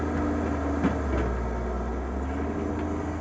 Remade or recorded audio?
recorded